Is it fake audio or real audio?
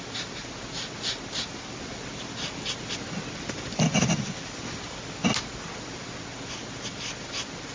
real